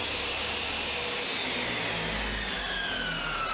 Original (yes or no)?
yes